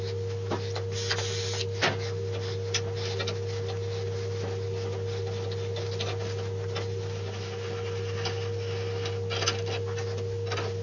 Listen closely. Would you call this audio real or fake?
real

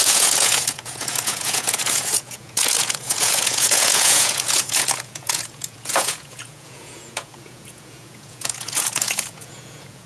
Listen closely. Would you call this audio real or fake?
fake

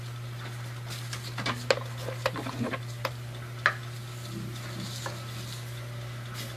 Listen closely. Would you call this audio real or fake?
real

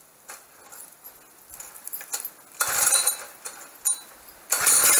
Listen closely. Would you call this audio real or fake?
real